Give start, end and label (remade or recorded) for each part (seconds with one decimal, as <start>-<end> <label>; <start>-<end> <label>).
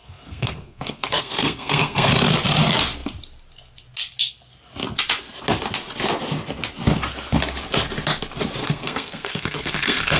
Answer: 0.0-2.1 remade; 2.1-8.6 recorded; 8.6-10.2 remade